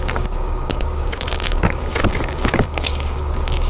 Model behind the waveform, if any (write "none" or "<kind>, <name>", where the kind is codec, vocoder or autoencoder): codec, DAC